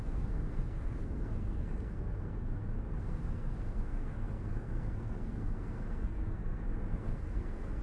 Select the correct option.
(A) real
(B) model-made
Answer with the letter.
B